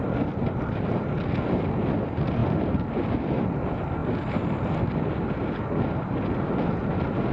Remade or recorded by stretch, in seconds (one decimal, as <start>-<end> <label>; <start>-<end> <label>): 0.0-7.3 recorded

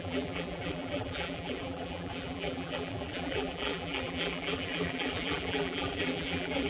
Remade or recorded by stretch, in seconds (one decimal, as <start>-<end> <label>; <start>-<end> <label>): 0.0-6.7 remade